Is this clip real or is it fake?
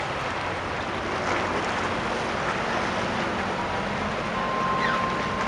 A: real